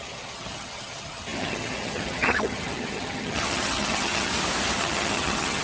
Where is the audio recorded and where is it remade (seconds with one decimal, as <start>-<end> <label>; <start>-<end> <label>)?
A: 0.0-4.3 remade; 4.3-4.8 recorded; 4.8-5.6 remade